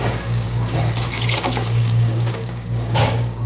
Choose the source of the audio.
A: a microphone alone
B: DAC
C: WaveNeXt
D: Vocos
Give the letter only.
B